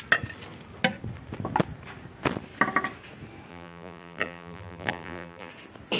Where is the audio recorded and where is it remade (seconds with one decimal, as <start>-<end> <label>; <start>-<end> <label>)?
0.0-3.5 recorded; 3.5-5.5 remade; 5.5-6.0 recorded